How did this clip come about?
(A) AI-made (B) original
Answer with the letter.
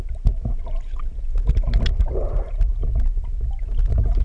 B